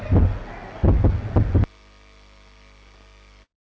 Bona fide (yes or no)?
yes